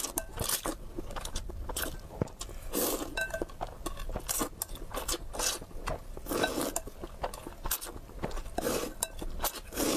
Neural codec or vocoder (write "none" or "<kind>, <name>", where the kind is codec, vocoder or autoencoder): none